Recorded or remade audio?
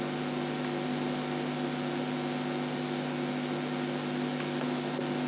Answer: recorded